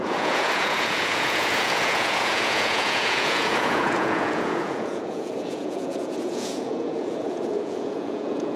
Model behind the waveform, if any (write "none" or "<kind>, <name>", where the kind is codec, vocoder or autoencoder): vocoder, Vocos